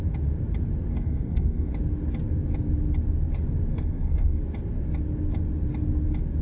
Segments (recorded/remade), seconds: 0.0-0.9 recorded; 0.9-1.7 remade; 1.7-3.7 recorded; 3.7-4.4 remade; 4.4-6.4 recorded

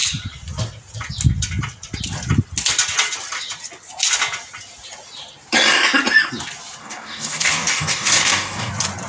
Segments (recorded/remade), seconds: 0.0-6.8 recorded; 6.8-8.7 remade; 8.7-9.1 recorded

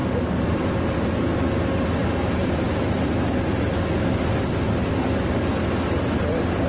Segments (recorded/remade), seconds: 0.0-0.7 remade; 0.7-2.0 recorded; 2.0-3.7 remade; 3.7-6.7 recorded

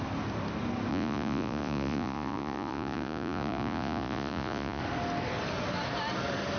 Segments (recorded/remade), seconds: 0.0-0.9 recorded; 0.9-4.8 remade; 4.8-6.6 recorded

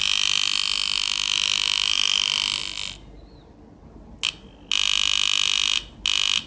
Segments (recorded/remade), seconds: 0.0-6.5 recorded

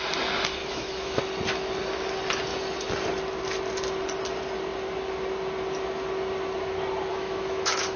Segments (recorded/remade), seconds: 0.0-0.6 recorded; 0.6-1.2 remade; 1.2-7.1 recorded; 7.1-8.0 remade